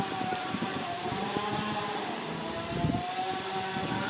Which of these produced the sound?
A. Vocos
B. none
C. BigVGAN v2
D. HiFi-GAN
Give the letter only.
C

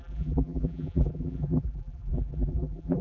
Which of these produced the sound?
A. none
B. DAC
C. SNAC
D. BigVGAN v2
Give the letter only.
D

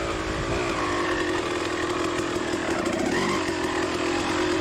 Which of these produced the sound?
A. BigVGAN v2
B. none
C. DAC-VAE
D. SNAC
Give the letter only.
B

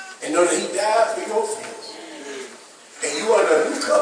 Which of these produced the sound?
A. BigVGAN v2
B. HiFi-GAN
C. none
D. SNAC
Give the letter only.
C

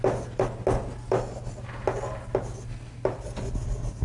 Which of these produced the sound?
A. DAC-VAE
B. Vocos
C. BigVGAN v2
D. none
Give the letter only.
D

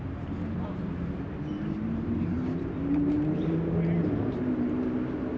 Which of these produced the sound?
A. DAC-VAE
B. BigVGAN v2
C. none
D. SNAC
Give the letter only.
B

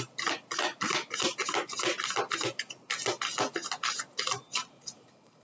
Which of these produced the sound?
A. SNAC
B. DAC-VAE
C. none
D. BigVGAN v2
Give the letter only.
C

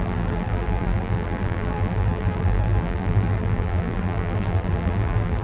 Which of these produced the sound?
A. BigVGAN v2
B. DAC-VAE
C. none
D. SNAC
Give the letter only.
A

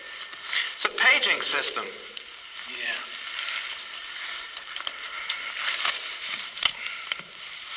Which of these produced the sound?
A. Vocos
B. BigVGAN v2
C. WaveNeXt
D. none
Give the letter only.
B